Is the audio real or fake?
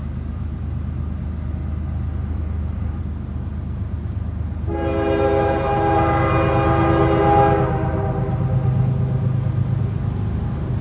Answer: real